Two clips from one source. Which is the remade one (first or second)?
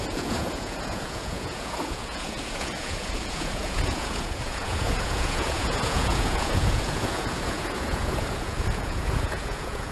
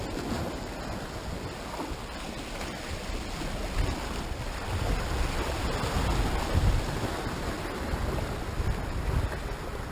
first